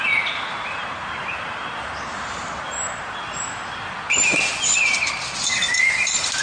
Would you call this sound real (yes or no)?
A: yes